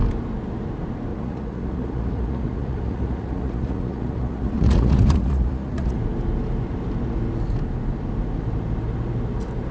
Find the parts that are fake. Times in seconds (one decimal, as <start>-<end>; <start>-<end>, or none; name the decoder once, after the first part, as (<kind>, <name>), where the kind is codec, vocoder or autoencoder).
1.1-6.0 (vocoder, Vocos)

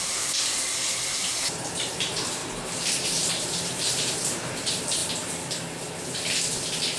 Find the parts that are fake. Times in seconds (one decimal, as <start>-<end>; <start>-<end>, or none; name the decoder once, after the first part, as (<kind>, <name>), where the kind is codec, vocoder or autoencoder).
0.0-2.4 (vocoder, BigVGAN v2); 3.3-5.0